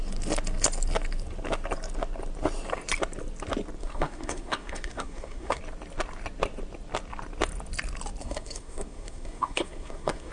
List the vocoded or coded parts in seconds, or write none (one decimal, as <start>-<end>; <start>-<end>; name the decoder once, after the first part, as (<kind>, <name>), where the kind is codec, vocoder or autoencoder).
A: 3.8-5.6 (codec, SNAC); 8.2-10.3